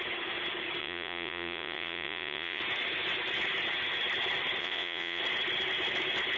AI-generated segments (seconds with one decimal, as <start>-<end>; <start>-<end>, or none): 0.8-2.6; 4.6-5.2